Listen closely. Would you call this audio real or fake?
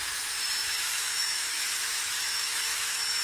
fake